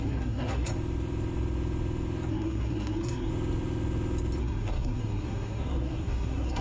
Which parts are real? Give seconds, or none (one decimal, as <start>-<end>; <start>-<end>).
0.7-2.3; 3.3-4.4